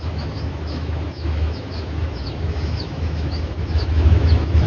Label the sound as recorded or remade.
remade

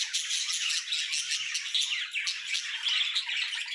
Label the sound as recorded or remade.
recorded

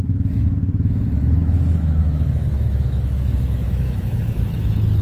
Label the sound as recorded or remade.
remade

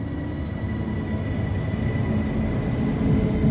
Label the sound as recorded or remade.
recorded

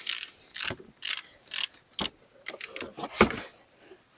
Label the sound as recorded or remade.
recorded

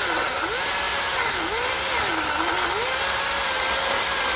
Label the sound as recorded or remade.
recorded